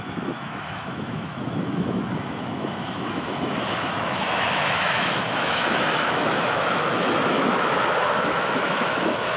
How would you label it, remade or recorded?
remade